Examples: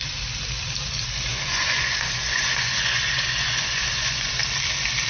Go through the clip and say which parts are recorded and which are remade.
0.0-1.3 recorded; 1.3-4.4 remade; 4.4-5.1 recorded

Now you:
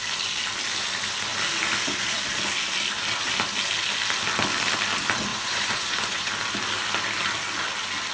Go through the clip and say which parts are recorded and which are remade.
0.0-5.3 recorded; 5.3-6.3 remade; 6.3-8.1 recorded

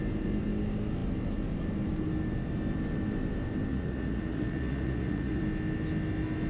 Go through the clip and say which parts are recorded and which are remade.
0.0-3.7 recorded; 3.7-5.4 remade; 5.4-6.5 recorded

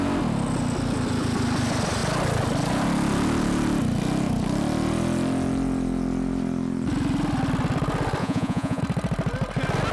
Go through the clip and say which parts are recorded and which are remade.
0.0-8.2 recorded; 8.2-8.8 remade; 8.8-9.9 recorded

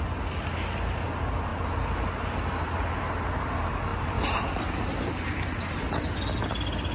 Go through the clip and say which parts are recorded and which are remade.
0.0-6.9 recorded

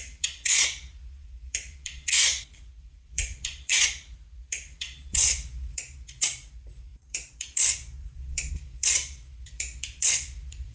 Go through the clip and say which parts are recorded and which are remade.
0.0-10.7 remade

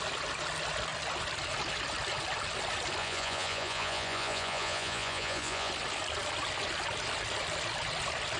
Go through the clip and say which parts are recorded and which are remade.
0.0-3.0 recorded; 3.0-5.7 remade; 5.7-8.4 recorded

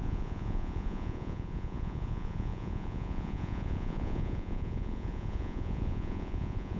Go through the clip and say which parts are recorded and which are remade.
0.0-6.8 remade